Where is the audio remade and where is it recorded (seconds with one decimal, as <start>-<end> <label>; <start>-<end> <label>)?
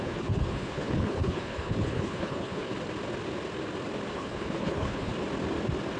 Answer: 0.0-2.7 remade; 2.7-4.1 recorded; 4.1-5.1 remade; 5.1-6.0 recorded